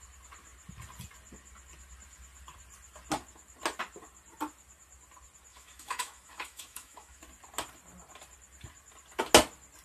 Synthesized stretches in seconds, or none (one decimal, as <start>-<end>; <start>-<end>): 5.5-7.2